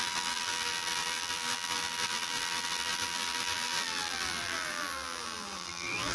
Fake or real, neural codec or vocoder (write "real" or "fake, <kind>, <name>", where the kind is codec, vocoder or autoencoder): fake, vocoder, BigVGAN v2